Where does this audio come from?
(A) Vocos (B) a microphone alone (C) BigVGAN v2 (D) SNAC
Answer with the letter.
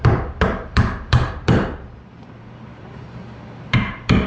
C